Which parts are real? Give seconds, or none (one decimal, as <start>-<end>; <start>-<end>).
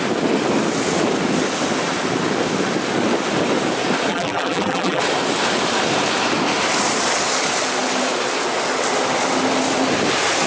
0.0-4.1; 5.0-10.5